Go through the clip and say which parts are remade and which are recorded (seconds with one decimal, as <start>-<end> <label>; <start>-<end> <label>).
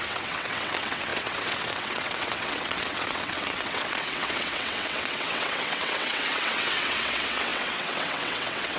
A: 0.0-8.8 remade